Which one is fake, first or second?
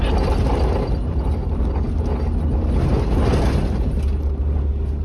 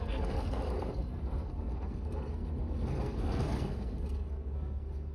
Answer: second